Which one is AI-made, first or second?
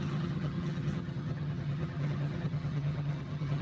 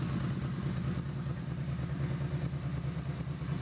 first